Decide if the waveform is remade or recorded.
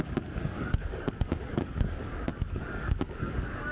remade